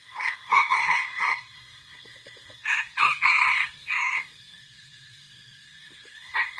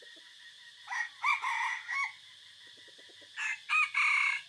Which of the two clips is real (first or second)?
second